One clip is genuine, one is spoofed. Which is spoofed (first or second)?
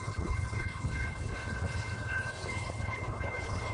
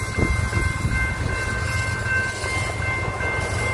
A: first